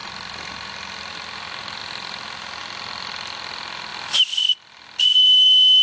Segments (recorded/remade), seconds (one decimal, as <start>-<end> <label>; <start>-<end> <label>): 0.0-1.1 remade; 1.1-5.8 recorded